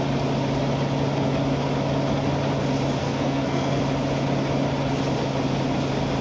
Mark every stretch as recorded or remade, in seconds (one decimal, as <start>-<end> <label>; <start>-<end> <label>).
0.0-3.0 recorded; 3.0-3.8 remade; 3.8-6.2 recorded